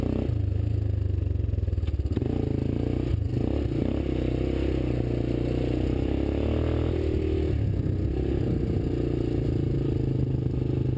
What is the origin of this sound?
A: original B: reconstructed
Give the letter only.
A